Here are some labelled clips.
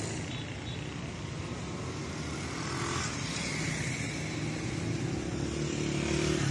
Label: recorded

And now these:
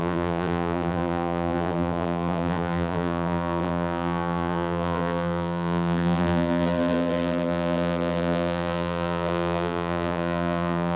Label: remade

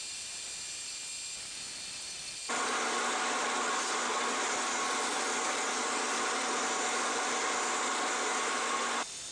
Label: recorded